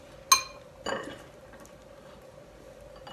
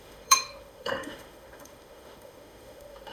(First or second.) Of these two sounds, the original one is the first